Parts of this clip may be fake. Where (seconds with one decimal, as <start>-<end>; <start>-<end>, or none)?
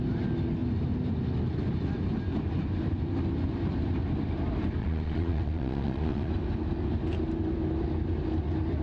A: 4.8-6.3